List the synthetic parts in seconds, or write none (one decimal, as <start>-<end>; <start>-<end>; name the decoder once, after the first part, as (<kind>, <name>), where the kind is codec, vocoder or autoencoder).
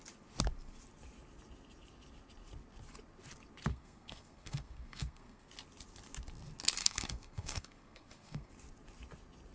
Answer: 3.7-5.5 (codec, SNAC); 6.8-8.5